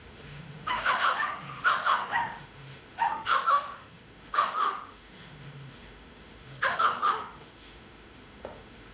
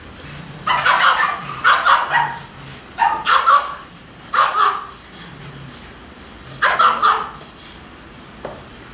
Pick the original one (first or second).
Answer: second